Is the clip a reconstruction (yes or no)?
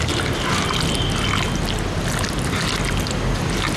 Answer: no